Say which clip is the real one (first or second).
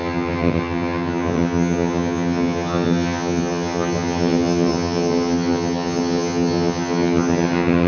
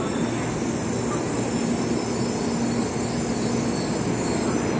second